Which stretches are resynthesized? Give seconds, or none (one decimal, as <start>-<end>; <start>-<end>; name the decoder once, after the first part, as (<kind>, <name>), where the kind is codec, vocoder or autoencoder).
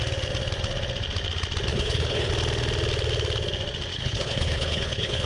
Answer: 1.7-2.3 (codec, HILCodec); 3.9-5.3